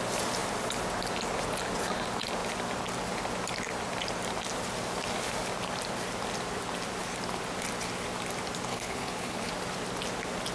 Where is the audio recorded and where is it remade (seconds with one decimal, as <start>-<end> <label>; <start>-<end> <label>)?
0.0-8.7 recorded; 8.7-9.5 remade; 9.5-10.5 recorded